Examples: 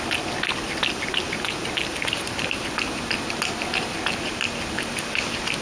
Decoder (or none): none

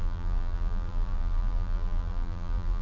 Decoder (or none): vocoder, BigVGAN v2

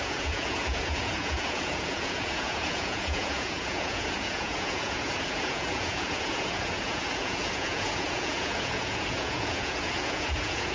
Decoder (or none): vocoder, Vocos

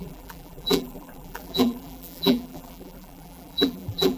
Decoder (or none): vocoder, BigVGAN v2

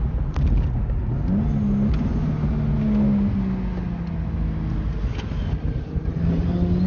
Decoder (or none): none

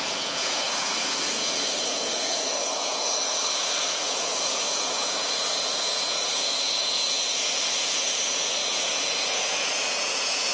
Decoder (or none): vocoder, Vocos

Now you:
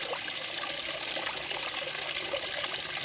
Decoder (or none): none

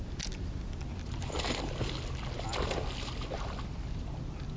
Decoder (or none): none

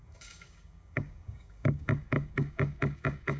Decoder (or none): codec, DAC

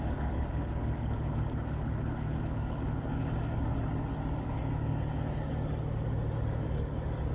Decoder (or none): codec, DAC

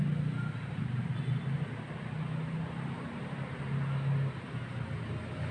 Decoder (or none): none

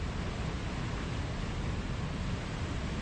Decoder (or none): none